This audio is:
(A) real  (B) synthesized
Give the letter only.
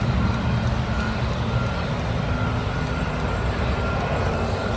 A